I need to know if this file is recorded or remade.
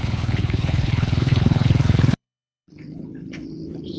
remade